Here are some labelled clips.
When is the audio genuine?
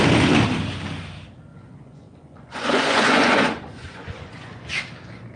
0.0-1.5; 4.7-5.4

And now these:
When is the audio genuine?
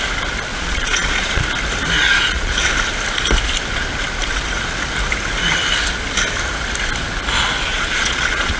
0.0-0.5; 1.4-2.0; 2.5-7.7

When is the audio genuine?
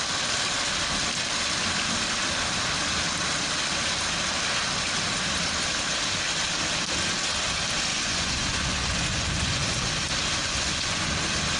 0.0-7.9; 9.9-10.4; 11.1-11.6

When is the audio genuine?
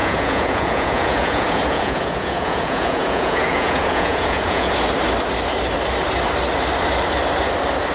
4.7-7.9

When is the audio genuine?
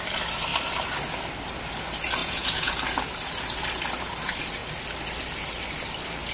0.0-2.2; 2.7-6.3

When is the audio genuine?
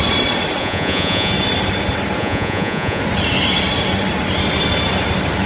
0.0-0.6; 1.3-2.2; 3.0-5.5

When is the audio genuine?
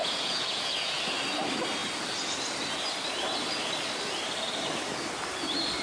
1.0-5.8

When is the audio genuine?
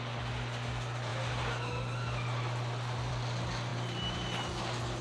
0.0-5.0